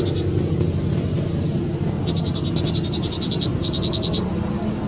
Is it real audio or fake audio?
real